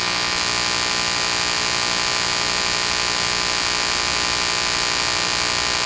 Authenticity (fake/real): real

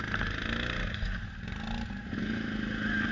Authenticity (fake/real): real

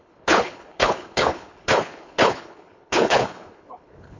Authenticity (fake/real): fake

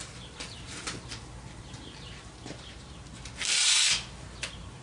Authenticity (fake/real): real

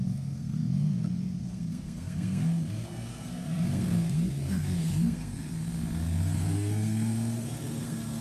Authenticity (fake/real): fake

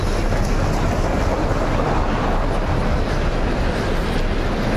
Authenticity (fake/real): real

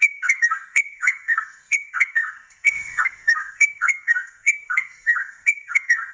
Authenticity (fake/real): fake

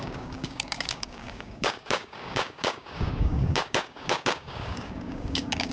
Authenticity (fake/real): fake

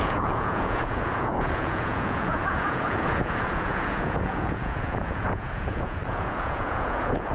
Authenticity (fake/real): fake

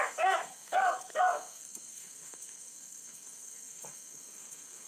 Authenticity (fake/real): fake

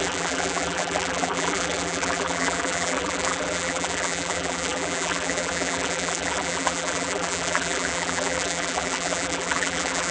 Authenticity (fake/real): fake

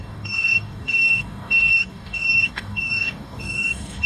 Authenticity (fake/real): fake